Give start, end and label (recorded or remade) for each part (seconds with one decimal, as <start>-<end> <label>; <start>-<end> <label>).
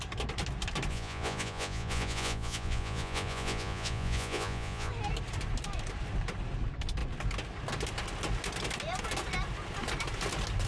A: 0.0-0.9 recorded; 0.9-4.9 remade; 4.9-10.7 recorded